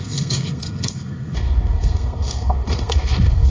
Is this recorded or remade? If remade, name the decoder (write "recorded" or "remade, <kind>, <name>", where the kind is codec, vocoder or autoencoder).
remade, codec, SNAC